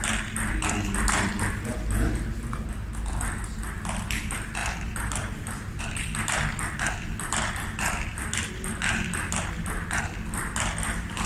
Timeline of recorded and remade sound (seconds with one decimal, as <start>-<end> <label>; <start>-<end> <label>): 0.0-4.6 recorded; 4.6-5.8 remade; 5.8-11.3 recorded